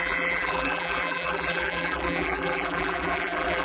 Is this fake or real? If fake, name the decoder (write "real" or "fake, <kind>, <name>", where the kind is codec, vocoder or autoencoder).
fake, vocoder, BigVGAN v2